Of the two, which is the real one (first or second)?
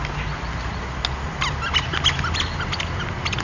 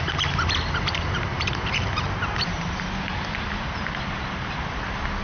first